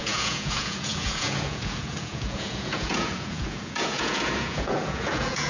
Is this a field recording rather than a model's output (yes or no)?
no